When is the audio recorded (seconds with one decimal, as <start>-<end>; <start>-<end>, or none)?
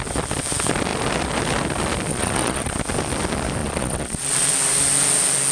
0.0-2.1; 2.7-3.6; 4.5-5.5